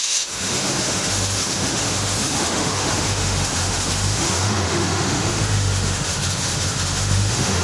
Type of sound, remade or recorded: remade